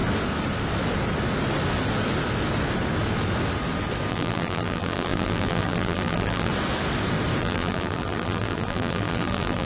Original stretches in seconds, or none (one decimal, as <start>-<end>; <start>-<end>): 0.0-4.1; 6.5-7.4